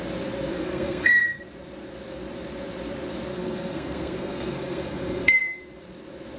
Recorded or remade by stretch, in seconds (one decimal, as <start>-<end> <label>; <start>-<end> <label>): 0.0-0.5 recorded; 0.5-1.4 remade; 1.4-3.3 recorded; 3.3-5.6 remade; 5.6-6.4 recorded

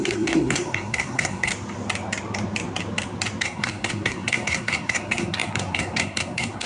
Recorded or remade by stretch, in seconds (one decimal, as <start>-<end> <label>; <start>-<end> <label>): 0.0-1.5 remade; 1.5-3.4 recorded; 3.4-6.7 remade

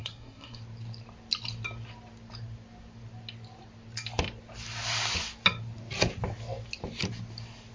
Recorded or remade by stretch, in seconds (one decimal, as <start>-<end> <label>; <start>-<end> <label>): 0.0-0.6 remade; 0.6-7.7 recorded

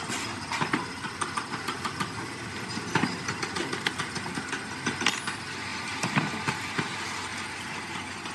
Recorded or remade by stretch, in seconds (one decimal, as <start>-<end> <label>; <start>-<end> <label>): 0.0-8.3 recorded

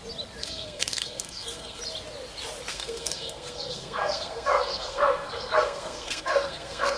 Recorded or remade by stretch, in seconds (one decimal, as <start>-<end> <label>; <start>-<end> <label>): 0.0-0.4 recorded; 0.4-1.8 remade; 1.8-2.7 recorded; 2.7-7.0 remade